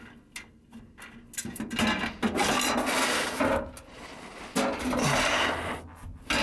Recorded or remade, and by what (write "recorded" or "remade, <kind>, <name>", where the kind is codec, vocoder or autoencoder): recorded